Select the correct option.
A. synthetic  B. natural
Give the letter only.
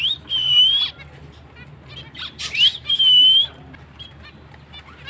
B